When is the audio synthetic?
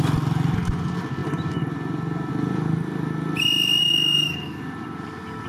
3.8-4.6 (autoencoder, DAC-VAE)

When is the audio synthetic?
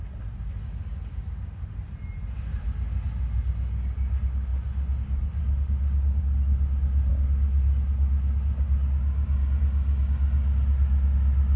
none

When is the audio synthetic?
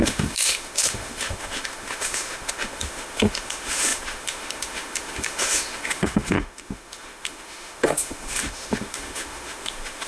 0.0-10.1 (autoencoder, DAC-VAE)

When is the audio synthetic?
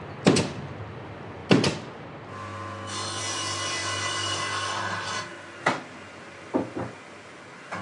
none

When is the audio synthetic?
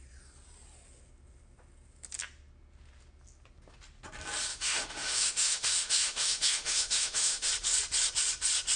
4.5-7.5 (autoencoder, DAC-VAE)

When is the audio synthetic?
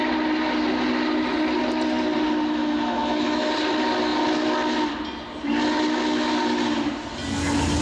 2.6-3.5 (autoencoder, DAC-VAE)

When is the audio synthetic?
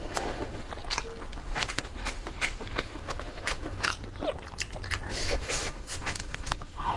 0.0-0.7 (autoencoder, DAC-VAE); 1.4-3.9; 5.1-7.0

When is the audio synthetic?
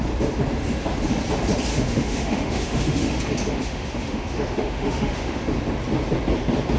1.7-3.2 (autoencoder, DAC-VAE); 3.6-5.4